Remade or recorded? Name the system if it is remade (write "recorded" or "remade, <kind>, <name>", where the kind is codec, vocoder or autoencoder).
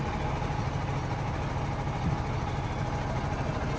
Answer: recorded